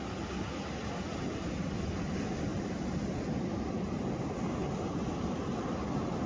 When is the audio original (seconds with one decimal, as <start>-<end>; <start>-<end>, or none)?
0.0-2.5; 3.1-6.3